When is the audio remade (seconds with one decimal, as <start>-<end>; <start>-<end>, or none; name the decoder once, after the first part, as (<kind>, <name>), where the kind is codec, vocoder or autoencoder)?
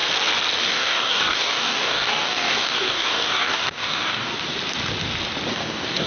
0.6-4.3 (codec, DAC); 5.5-6.1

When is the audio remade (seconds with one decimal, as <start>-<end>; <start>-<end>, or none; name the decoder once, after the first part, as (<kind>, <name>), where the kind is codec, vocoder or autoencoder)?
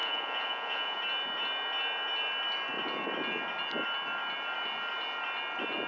0.0-1.0 (vocoder, Vocos)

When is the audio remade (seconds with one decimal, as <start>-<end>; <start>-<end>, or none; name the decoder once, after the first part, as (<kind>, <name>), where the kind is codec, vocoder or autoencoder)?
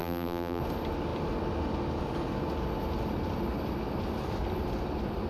0.0-0.6 (vocoder, BigVGAN v2)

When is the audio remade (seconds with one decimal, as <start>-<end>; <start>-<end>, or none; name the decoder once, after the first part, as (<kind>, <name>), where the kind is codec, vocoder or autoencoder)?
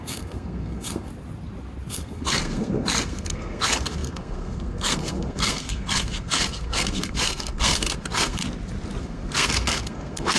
0.0-1.1 (codec, SNAC); 1.9-8.4; 9.0-10.4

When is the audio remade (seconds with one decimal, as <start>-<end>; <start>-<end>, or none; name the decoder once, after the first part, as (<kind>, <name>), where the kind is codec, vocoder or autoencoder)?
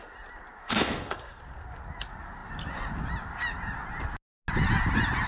0.6-1.4 (codec, SNAC)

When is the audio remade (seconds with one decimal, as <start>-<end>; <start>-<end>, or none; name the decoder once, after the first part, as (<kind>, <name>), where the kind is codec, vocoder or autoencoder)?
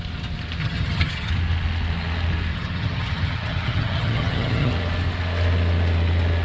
0.6-1.3 (vocoder, HiFi-GAN); 2.5-4.7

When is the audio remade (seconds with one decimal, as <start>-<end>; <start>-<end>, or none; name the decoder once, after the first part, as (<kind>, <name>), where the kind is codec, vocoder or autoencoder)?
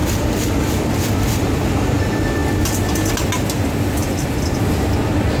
0.0-2.0 (vocoder, BigVGAN v2)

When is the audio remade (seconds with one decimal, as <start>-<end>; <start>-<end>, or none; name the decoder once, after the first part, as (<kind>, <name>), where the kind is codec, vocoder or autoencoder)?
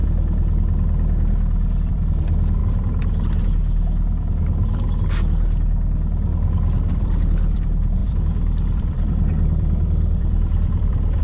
1.9-2.6 (vocoder, BigVGAN v2); 6.9-11.2